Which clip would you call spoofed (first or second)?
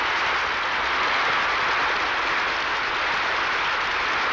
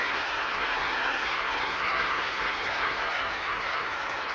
second